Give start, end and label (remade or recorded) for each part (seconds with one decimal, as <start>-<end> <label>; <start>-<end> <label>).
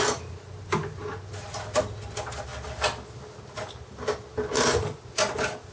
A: 0.0-5.7 recorded